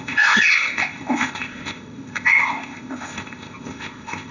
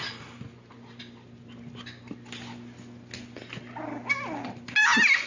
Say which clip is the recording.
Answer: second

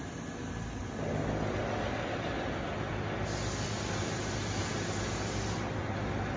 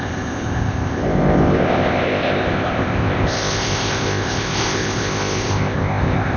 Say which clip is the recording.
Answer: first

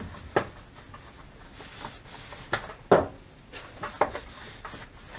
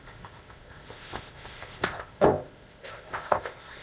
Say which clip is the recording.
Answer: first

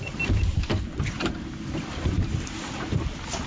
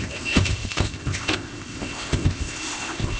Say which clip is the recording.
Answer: first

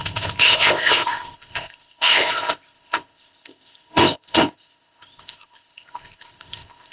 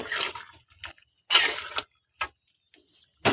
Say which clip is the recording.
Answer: second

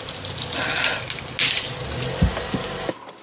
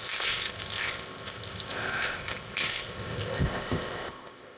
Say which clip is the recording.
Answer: first